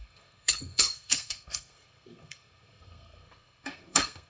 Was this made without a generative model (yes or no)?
no